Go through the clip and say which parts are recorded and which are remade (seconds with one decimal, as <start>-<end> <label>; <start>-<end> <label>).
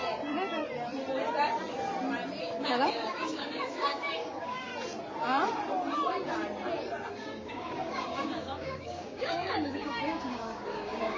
0.0-2.4 recorded; 2.4-4.7 remade; 4.7-7.1 recorded; 7.1-11.2 remade